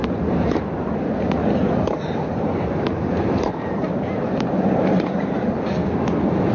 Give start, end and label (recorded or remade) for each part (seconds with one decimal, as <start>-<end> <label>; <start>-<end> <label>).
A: 0.0-1.6 recorded; 1.6-5.5 remade; 5.5-6.5 recorded